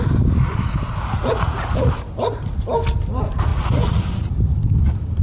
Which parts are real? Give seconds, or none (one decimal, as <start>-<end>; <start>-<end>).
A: 0.0-1.2; 1.9-3.5; 4.3-5.2